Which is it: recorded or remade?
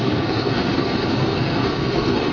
remade